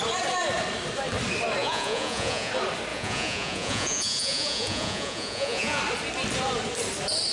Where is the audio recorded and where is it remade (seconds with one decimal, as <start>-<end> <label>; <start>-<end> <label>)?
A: 0.0-1.6 recorded; 1.6-2.5 remade; 2.5-2.9 recorded; 2.9-5.8 remade; 5.8-7.3 recorded